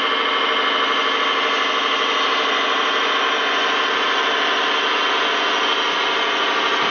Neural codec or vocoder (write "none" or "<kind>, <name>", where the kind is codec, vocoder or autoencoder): none